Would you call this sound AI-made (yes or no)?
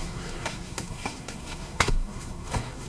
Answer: yes